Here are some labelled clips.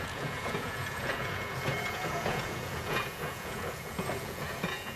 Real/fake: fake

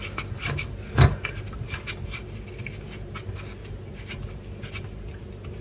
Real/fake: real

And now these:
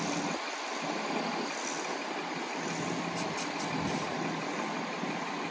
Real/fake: real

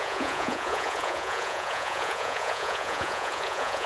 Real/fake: fake